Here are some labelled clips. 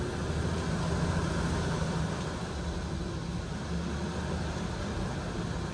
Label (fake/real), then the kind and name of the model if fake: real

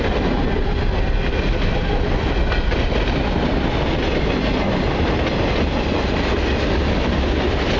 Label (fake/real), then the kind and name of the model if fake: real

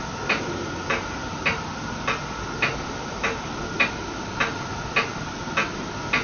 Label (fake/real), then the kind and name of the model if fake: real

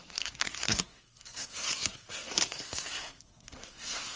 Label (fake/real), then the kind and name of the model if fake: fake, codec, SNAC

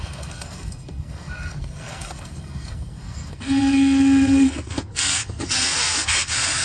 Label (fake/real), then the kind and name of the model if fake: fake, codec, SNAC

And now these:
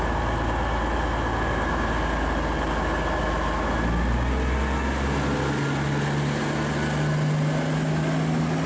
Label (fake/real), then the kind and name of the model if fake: real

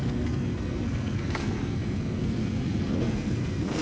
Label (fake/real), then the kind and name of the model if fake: fake, codec, SNAC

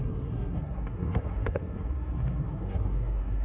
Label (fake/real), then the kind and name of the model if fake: fake, codec, SNAC